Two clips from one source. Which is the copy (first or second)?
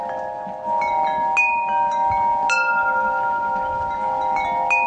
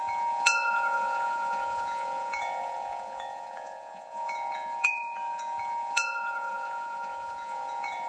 second